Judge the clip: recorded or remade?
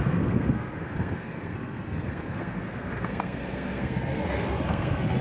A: remade